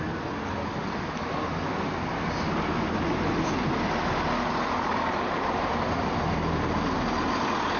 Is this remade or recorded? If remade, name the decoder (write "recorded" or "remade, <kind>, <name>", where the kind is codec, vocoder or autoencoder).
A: recorded